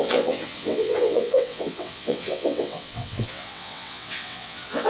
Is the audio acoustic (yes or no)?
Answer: no